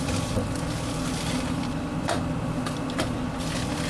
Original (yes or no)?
no